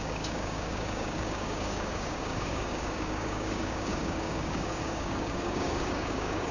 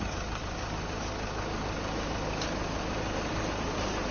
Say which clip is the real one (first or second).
second